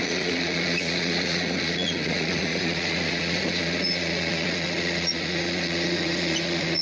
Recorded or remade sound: remade